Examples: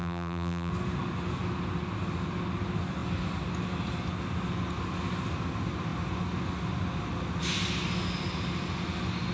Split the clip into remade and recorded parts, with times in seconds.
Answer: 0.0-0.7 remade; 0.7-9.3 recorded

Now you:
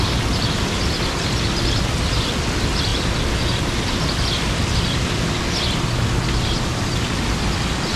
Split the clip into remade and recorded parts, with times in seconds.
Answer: 0.0-8.0 recorded

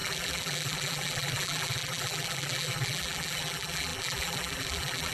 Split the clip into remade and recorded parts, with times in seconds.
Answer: 0.0-5.1 remade

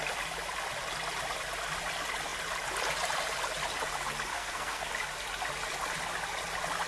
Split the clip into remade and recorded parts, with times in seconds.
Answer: 0.0-4.3 recorded; 4.3-4.9 remade; 4.9-6.9 recorded